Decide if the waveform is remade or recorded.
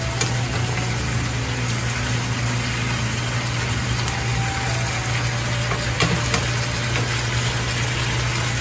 recorded